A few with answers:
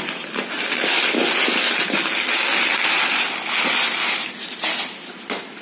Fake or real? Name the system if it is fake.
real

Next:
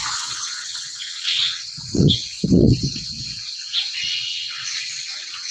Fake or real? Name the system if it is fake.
fake, vocoder, WaveNeXt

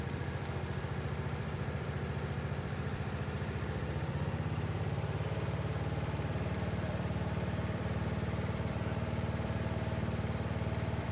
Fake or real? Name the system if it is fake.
fake, vocoder, BigVGAN v2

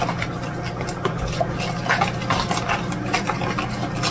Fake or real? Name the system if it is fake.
real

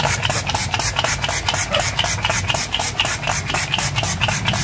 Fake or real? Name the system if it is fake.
real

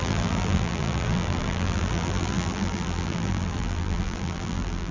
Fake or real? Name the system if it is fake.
fake, vocoder, BigVGAN v2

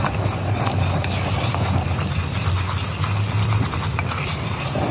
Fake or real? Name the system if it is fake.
real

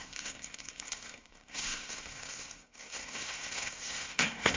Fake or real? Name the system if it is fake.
fake, codec, SNAC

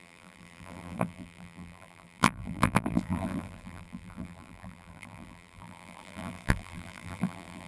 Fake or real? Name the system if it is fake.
fake, vocoder, BigVGAN v2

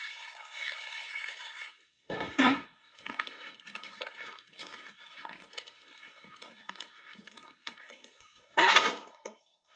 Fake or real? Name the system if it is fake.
fake, codec, SNAC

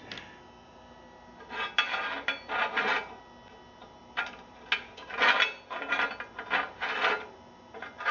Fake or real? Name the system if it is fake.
real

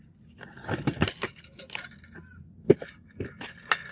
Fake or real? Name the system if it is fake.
real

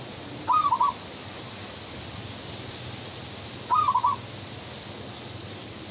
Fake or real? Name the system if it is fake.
real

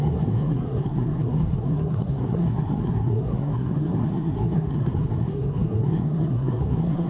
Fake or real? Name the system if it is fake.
fake, codec, SNAC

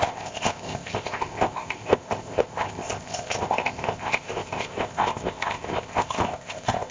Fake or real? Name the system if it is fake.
fake, codec, ZipCodec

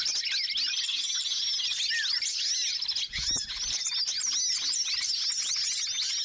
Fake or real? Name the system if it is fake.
real